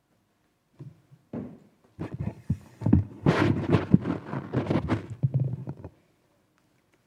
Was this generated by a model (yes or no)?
no